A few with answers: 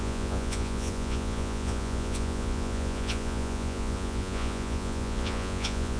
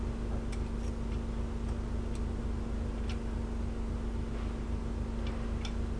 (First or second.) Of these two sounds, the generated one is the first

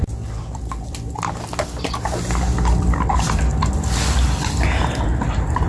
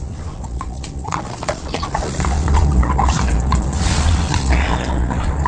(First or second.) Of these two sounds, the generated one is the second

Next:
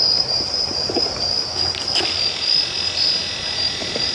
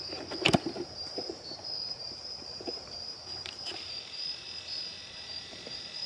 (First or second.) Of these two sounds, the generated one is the second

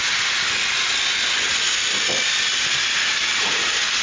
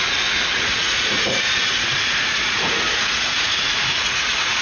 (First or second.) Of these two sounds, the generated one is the second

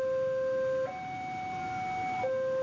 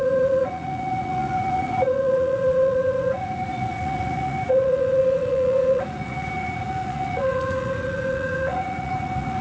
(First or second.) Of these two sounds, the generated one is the second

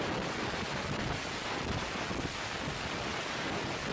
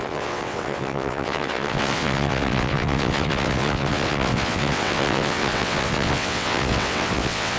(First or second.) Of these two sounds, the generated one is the second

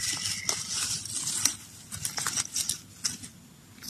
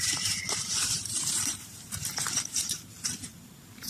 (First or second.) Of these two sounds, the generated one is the second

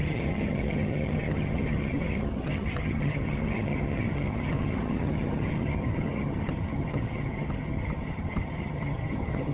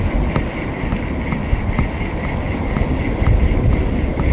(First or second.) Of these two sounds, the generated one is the first